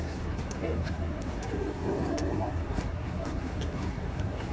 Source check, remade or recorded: remade